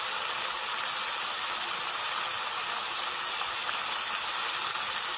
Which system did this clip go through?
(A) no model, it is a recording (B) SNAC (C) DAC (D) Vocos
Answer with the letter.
A